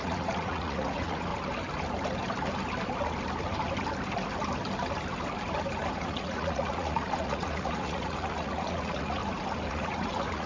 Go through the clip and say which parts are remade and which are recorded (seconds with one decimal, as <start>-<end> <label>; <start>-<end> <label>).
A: 0.0-1.3 remade; 1.3-6.0 recorded; 6.0-9.2 remade; 9.2-9.7 recorded; 9.7-10.5 remade